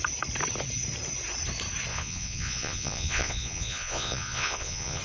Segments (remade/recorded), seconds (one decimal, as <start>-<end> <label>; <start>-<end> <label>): 0.0-1.9 recorded; 1.9-5.0 remade